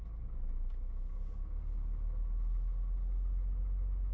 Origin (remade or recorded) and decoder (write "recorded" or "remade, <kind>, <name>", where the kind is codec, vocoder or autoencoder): recorded